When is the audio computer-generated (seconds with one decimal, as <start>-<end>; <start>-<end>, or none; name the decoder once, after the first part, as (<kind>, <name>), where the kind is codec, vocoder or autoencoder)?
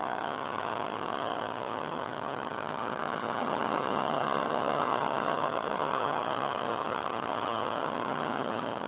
0.0-8.9 (vocoder, HiFi-GAN)